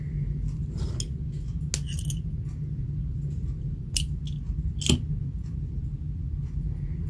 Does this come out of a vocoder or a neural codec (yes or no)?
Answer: no